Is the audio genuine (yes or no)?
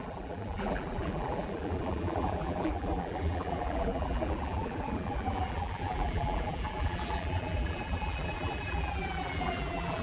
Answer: no